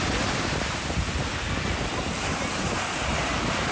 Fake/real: real